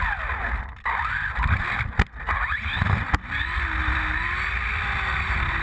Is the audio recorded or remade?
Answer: recorded